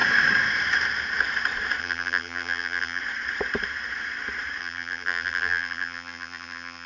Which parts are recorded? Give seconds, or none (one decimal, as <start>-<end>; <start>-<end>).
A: 0.0-1.8; 3.0-4.6

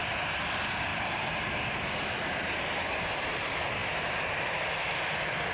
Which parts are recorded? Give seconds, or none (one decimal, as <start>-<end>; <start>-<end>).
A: 0.0-0.9; 2.8-3.8; 4.6-5.5

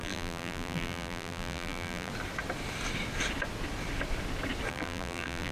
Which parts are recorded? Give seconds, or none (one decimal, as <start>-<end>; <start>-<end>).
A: 2.1-4.7

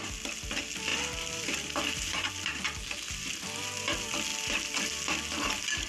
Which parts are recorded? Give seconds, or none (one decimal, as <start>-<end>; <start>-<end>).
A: 0.0-0.9; 2.3-5.9

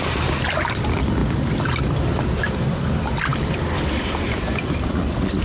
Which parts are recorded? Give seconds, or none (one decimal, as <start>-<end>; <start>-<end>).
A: none

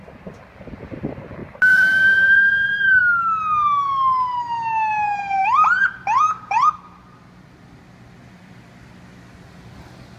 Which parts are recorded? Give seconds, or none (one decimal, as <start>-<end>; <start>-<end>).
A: 0.0-1.4; 3.0-10.2

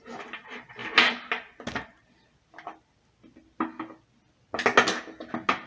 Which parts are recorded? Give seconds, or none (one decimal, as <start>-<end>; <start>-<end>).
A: 0.0-5.7

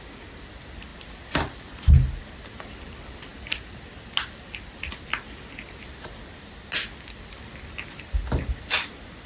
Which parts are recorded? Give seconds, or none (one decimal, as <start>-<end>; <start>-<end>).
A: 0.0-9.3